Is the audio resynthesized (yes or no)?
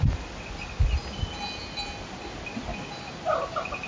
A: no